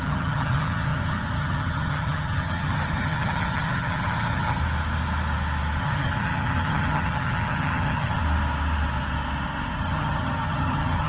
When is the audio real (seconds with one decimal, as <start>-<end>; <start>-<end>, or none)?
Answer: 4.6-5.8; 8.2-9.8